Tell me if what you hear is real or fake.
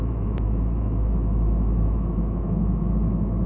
fake